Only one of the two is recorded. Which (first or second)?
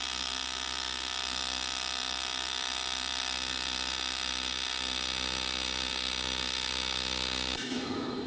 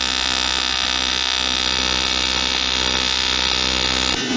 second